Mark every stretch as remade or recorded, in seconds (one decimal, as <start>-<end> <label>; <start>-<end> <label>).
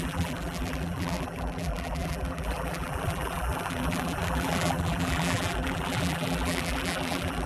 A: 0.0-7.5 remade